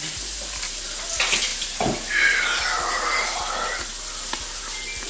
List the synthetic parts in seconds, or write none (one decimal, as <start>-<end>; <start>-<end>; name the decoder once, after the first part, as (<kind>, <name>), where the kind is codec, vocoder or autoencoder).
none